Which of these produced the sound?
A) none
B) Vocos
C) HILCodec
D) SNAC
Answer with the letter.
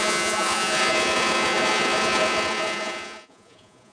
B